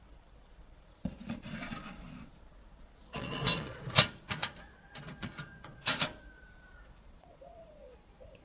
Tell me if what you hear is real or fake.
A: fake